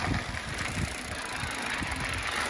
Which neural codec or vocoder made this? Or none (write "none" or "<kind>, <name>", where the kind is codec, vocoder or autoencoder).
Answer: none